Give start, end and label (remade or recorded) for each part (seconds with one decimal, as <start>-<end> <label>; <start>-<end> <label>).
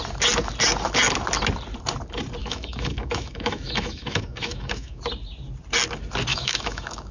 0.0-2.4 recorded; 2.4-5.0 remade; 5.0-6.3 recorded; 6.3-7.1 remade